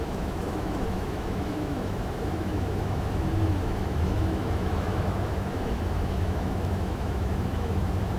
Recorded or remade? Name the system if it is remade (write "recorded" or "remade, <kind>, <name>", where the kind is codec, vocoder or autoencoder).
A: remade, autoencoder, DAC-VAE